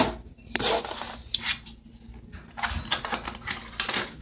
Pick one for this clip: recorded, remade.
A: recorded